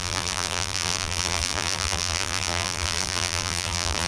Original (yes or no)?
no